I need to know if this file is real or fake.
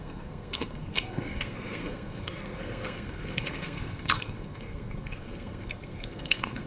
fake